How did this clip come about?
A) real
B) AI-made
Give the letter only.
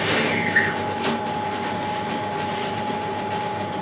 A